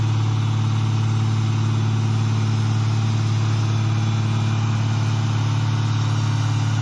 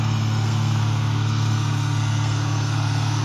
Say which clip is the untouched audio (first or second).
first